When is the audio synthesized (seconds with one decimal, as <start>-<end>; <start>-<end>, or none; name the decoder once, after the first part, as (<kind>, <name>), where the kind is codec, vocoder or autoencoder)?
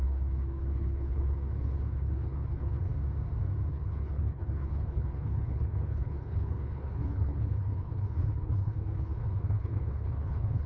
0.0-2.9 (codec, HILCodec); 3.7-10.7